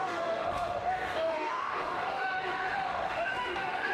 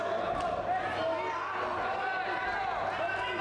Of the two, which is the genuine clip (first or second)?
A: second